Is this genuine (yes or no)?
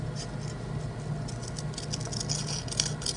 yes